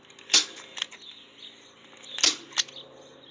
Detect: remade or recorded recorded